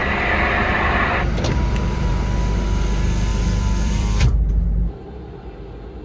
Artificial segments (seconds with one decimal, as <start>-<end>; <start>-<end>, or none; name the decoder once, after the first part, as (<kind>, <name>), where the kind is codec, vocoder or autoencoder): 0.0-2.1 (vocoder, BigVGAN v2); 3.3-4.5